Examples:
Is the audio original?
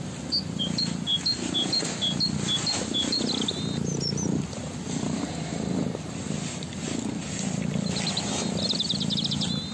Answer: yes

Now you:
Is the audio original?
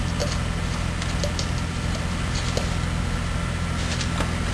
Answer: yes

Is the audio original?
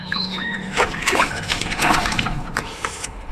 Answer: no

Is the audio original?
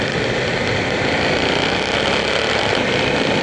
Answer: yes